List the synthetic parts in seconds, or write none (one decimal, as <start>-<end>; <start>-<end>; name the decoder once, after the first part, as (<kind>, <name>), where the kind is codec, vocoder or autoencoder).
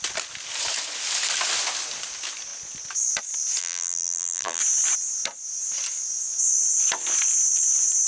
3.6-4.6 (vocoder, BigVGAN v2)